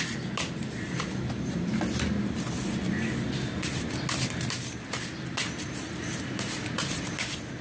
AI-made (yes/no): no